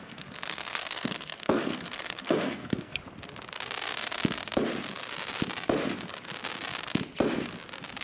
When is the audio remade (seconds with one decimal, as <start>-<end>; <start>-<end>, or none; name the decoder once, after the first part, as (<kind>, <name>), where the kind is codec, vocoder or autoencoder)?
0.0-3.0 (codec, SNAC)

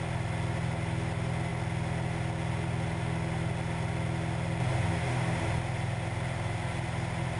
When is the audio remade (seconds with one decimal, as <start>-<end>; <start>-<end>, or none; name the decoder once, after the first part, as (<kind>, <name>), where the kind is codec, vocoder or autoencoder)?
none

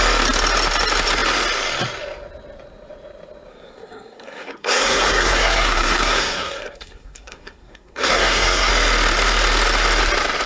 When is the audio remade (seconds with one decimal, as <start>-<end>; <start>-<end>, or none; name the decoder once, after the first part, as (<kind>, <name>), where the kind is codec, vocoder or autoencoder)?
3.5-8.7 (codec, SNAC)

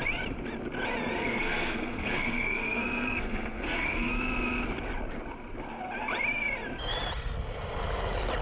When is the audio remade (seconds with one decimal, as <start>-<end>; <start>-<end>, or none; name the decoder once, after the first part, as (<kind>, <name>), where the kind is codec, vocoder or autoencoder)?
1.2-4.1 (codec, SNAC)

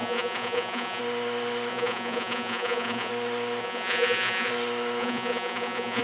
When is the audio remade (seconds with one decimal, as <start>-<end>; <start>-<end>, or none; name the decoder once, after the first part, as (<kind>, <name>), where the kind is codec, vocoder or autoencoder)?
0.0-1.0 (vocoder, Vocos); 1.7-3.1; 3.6-4.5; 5.0-6.0

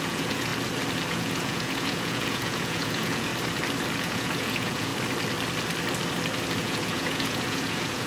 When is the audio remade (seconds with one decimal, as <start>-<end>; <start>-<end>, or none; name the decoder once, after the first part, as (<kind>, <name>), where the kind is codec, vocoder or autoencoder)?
0.0-0.5 (vocoder, Vocos); 1.1-3.3; 4.0-4.9; 6.6-8.1

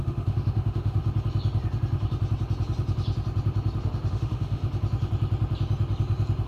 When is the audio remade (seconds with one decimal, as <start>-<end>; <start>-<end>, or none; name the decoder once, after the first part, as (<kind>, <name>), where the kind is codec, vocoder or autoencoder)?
0.0-1.0 (autoencoder, DAC-VAE); 4.1-4.6